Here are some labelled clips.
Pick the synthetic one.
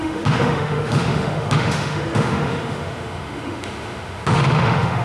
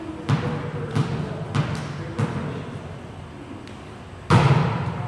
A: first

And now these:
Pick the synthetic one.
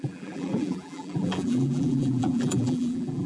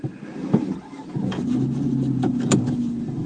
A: first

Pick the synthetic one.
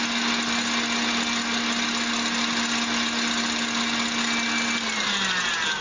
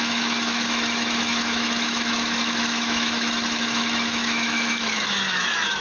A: second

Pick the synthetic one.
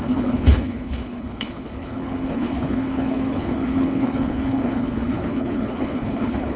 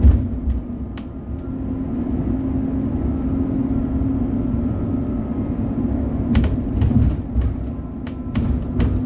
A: first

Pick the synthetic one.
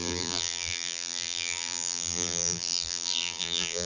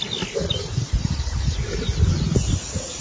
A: first